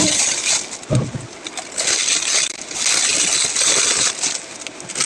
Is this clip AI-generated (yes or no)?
no